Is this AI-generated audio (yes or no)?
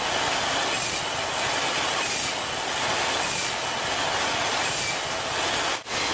no